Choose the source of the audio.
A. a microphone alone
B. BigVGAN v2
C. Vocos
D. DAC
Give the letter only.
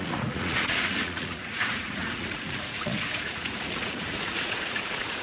C